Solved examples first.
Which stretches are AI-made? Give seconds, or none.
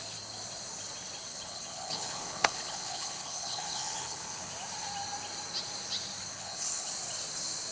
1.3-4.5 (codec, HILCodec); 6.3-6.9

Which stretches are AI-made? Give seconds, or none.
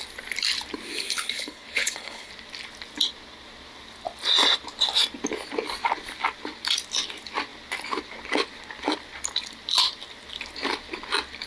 0.9-2.3 (codec, HILCodec)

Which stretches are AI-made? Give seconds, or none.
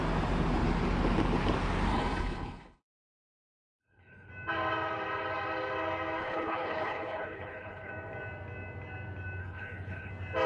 1.9-4.3 (codec, HILCodec); 6.2-7.9; 9.4-10.1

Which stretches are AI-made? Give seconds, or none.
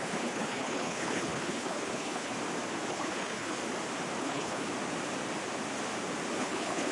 0.0-2.3 (codec, HILCodec); 2.9-3.6; 4.2-4.7; 6.4-6.9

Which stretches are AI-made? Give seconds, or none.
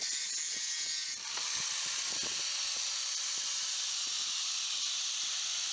none